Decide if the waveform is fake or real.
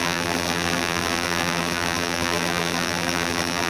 fake